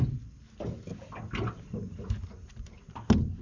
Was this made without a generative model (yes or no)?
yes